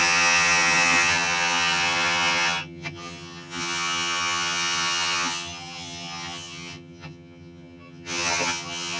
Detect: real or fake fake